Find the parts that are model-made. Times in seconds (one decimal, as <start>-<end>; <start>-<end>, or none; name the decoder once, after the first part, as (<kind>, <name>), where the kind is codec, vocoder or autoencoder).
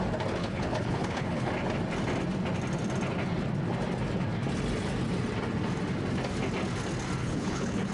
0.4-1.5 (codec, HILCodec); 7.2-7.9